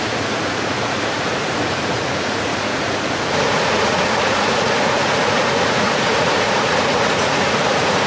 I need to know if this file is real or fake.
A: fake